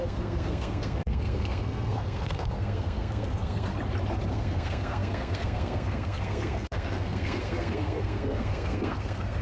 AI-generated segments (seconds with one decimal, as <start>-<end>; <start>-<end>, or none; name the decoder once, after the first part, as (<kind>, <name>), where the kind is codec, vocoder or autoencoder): 0.0-3.7 (codec, SNAC); 4.3-9.4